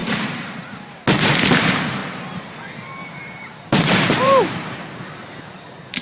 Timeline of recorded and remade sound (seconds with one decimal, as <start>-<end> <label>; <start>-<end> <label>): 0.0-0.5 remade; 0.5-2.0 recorded; 2.0-2.5 remade; 2.5-3.0 recorded; 3.0-5.4 remade; 5.4-6.0 recorded